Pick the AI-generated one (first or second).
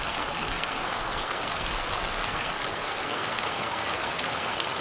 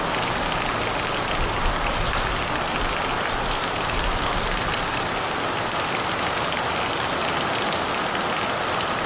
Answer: first